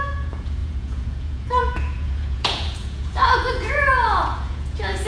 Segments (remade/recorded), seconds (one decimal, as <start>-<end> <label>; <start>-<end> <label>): 0.0-5.1 remade

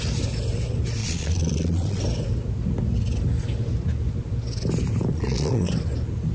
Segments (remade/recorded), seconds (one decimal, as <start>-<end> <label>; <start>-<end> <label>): 0.0-1.0 recorded; 1.0-2.0 remade; 2.0-5.1 recorded; 5.1-5.7 remade; 5.7-6.3 recorded

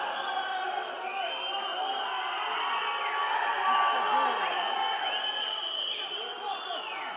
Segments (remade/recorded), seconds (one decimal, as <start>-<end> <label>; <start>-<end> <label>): 0.0-7.2 recorded